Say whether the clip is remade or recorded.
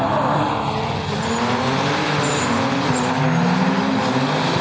recorded